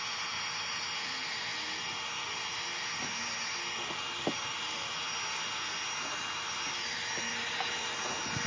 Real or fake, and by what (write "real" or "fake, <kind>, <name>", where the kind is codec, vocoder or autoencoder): real